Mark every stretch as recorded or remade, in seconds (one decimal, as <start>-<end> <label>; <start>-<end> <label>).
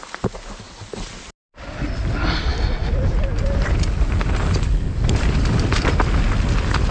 0.0-6.9 recorded